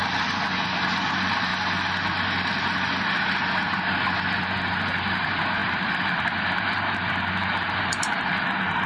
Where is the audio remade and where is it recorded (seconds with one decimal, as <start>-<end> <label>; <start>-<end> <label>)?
0.0-1.1 recorded; 1.1-1.5 remade; 1.5-4.9 recorded; 4.9-8.9 remade